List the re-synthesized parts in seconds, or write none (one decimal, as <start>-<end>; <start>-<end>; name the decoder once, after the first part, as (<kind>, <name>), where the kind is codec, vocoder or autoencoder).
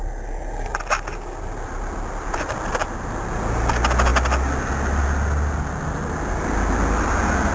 none